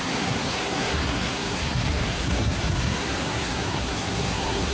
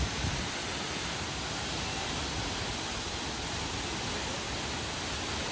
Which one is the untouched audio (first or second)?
second